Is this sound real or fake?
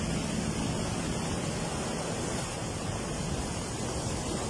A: real